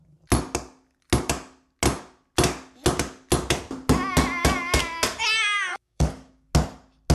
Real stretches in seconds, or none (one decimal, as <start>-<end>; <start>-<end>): 0.0-5.7; 6.5-7.1